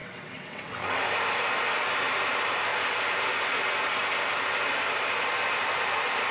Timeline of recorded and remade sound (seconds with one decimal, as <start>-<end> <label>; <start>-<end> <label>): 0.0-1.0 remade; 1.0-6.3 recorded